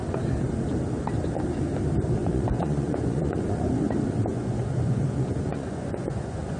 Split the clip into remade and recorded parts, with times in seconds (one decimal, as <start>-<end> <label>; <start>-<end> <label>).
0.0-2.2 recorded; 2.2-3.7 remade; 3.7-4.3 recorded; 4.3-6.6 remade